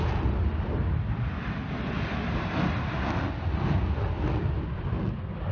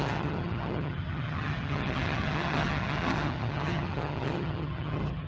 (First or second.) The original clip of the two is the first